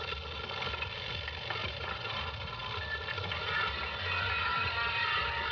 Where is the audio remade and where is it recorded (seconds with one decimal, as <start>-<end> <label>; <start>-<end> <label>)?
0.0-1.6 recorded; 1.6-2.2 remade; 2.2-4.6 recorded; 4.6-5.5 remade